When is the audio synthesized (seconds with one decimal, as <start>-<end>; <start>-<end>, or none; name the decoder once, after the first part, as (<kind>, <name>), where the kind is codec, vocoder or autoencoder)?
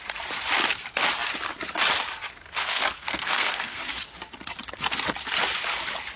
2.6-3.8 (codec, SNAC)